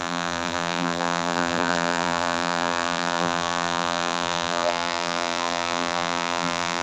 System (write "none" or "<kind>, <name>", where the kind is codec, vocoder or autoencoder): vocoder, BigVGAN v2